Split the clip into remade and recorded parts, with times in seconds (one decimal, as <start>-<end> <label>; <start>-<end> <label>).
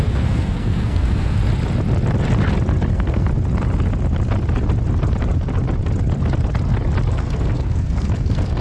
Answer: 0.0-1.4 remade; 1.4-2.9 recorded; 2.9-3.3 remade; 3.3-7.1 recorded; 7.1-8.6 remade